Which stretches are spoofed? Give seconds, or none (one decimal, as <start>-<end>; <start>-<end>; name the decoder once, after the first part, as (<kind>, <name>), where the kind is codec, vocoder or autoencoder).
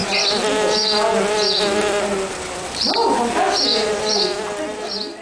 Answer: 3.7-4.2 (vocoder, Vocos)